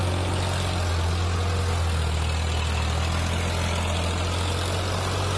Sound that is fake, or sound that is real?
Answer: real